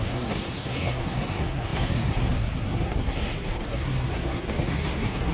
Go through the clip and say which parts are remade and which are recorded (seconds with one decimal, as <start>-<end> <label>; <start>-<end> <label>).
0.0-5.3 remade